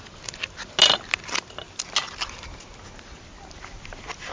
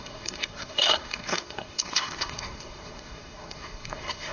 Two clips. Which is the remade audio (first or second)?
second